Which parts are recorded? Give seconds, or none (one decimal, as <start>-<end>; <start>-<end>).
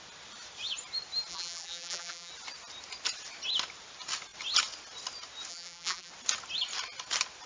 0.0-1.3; 2.3-5.5; 6.1-7.5